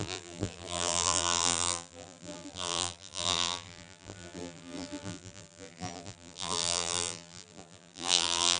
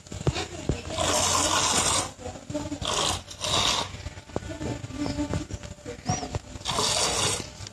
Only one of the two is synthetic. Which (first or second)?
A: first